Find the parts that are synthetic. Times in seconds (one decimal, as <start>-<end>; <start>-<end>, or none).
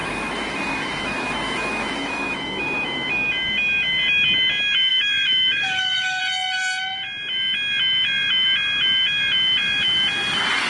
0.0-3.3; 4.9-6.2